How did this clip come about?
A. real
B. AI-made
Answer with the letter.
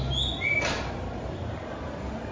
A